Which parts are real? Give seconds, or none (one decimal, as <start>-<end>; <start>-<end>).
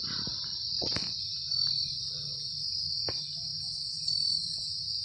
none